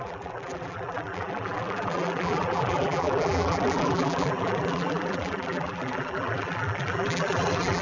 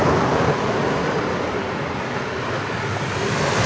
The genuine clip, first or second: second